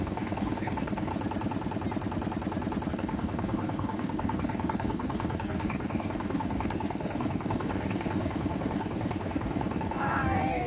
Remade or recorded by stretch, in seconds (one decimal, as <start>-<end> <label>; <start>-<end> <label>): 0.0-1.1 remade; 1.1-2.9 recorded; 2.9-10.7 remade